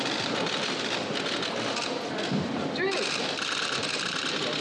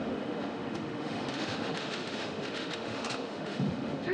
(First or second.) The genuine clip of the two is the first